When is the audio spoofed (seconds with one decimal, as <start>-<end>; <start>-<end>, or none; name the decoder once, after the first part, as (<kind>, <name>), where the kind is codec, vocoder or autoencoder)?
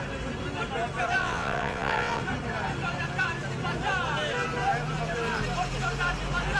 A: 1.2-2.2 (vocoder, WaveNeXt)